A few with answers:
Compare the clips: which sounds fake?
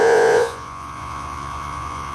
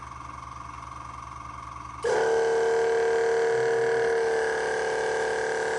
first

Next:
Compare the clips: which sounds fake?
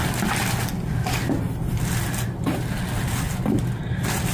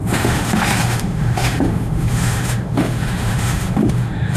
second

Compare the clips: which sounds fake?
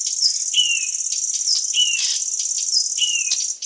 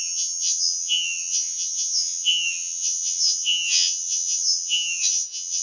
second